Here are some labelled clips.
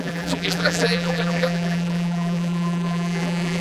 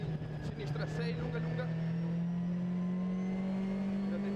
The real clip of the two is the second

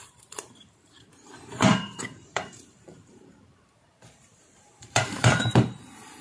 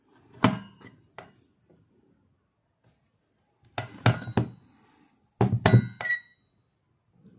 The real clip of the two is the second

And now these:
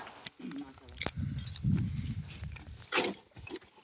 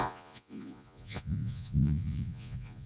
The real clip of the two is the first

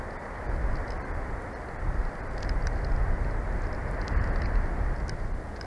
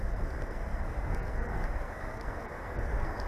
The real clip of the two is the first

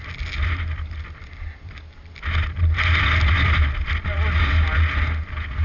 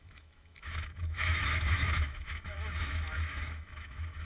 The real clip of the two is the first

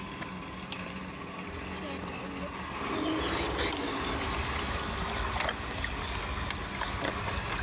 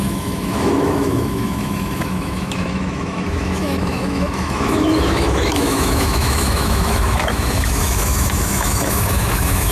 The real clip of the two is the first